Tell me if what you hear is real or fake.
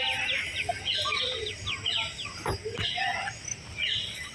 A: real